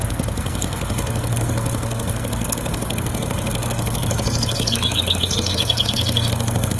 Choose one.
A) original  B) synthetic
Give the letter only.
B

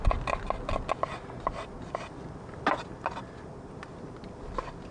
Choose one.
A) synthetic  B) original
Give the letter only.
B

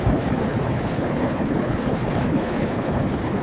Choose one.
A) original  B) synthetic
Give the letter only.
B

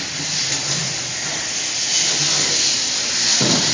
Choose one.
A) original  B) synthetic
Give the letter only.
A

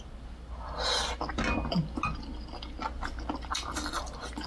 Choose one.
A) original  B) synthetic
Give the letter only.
A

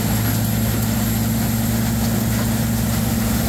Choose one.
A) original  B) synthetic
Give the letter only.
A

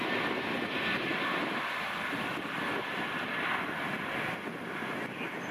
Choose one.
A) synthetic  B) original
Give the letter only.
B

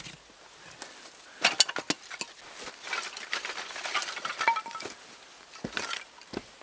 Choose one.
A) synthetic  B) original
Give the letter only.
B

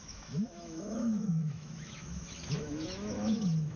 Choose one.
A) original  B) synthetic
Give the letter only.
B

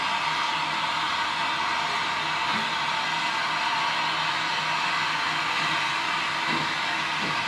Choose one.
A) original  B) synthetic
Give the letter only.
A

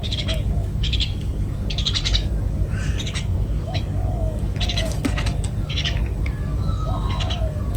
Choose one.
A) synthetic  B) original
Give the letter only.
A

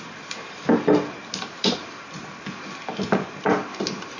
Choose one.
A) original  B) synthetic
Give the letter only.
A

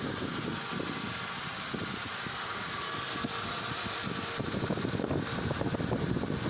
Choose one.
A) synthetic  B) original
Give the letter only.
B